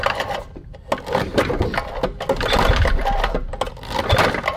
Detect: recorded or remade recorded